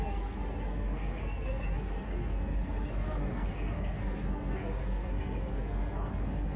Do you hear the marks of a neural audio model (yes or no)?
yes